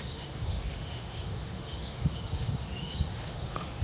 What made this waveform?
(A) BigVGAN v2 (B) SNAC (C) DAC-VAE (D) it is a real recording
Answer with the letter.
C